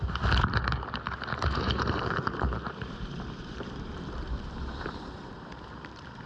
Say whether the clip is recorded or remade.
remade